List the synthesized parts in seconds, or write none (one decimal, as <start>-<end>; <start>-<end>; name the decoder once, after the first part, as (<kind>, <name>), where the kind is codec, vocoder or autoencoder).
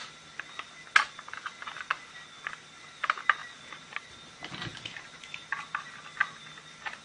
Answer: none